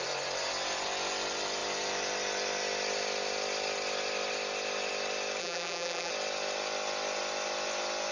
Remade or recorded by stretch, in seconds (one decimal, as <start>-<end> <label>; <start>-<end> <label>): 0.0-5.4 recorded; 5.4-6.1 remade; 6.1-8.1 recorded